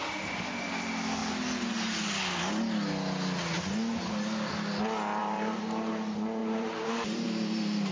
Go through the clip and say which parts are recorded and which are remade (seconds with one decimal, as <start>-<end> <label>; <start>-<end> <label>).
0.0-5.2 recorded; 5.2-5.9 remade; 5.9-6.4 recorded; 6.4-7.9 remade